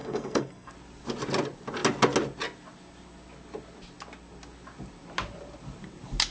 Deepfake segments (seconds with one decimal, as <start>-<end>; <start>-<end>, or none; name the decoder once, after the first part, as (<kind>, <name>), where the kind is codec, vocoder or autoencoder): 0.0-0.7 (codec, SNAC)